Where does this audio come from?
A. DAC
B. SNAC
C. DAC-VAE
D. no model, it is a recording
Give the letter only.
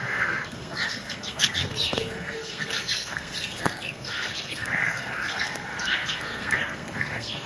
B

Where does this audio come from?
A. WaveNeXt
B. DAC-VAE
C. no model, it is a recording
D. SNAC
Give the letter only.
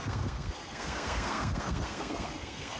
D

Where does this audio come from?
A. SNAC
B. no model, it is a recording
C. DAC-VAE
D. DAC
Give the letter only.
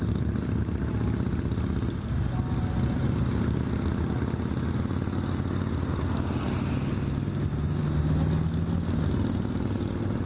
B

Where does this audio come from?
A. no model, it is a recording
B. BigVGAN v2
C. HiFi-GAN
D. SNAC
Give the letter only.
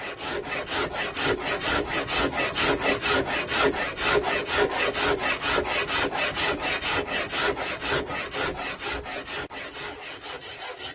A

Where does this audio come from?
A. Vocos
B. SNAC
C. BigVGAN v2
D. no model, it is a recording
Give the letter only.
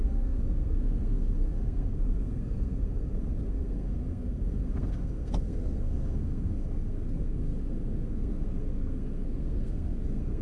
B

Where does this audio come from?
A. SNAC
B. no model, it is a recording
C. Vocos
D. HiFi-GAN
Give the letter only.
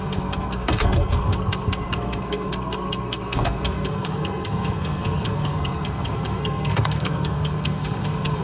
A